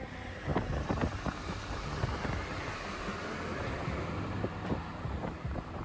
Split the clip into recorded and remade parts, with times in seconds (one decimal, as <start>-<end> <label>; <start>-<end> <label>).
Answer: 0.0-5.8 recorded